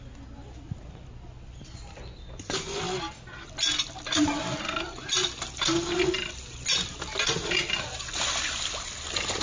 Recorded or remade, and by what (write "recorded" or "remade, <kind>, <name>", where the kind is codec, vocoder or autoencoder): recorded